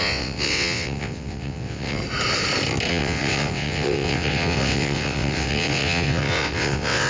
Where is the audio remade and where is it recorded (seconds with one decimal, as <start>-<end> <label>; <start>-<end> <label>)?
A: 0.0-2.0 remade; 2.0-2.9 recorded; 2.9-7.1 remade